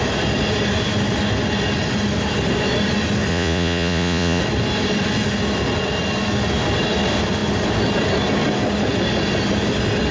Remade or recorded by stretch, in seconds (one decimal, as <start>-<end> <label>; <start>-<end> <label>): 0.0-3.3 recorded; 3.3-4.4 remade; 4.4-10.1 recorded